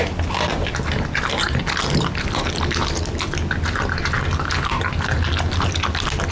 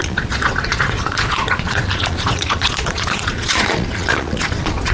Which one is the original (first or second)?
first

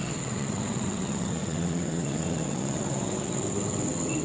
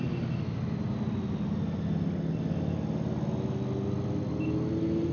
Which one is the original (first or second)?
second